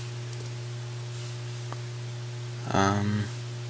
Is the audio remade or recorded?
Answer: recorded